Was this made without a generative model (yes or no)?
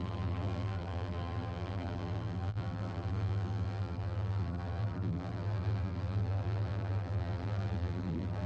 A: no